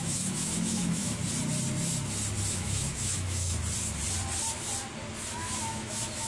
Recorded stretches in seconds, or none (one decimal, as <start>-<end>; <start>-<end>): 1.2-2.5; 3.6-5.3